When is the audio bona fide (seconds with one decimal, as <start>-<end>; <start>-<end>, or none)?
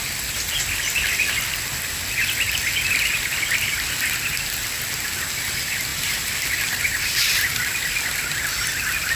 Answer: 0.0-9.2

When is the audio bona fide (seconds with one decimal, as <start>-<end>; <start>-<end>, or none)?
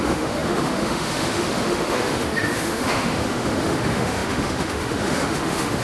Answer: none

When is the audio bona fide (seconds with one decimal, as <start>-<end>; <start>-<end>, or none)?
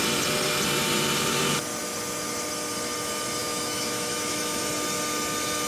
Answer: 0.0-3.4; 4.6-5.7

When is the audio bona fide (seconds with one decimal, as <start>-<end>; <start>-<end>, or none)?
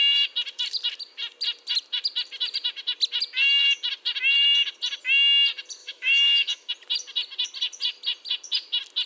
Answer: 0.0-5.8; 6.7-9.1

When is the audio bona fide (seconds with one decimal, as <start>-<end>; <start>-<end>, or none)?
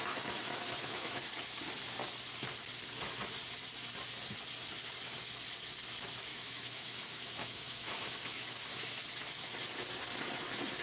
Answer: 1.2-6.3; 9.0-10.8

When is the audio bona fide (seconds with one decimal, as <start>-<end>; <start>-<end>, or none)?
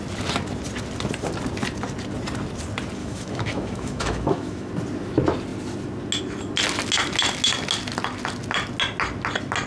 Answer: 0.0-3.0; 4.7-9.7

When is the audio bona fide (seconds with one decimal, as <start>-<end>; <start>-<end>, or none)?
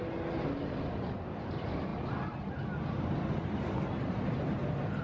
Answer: 0.0-5.0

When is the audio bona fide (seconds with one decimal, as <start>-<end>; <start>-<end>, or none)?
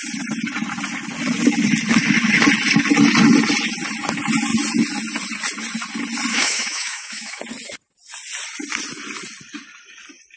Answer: 0.0-6.3; 7.4-10.4